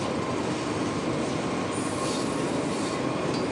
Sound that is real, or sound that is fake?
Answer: real